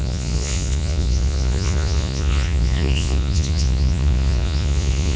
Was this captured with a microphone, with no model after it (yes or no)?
no